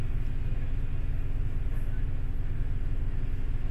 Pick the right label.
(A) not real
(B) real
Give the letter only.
B